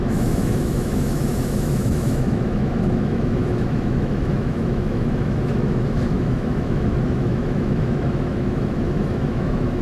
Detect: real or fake fake